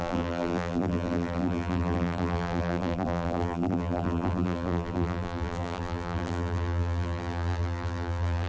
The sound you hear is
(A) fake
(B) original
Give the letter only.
A